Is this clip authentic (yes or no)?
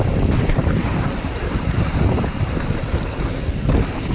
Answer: yes